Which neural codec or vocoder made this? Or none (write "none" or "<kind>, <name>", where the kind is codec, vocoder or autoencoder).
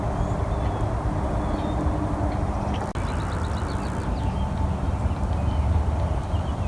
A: none